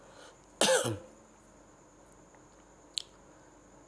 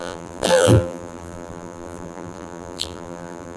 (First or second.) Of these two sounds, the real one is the first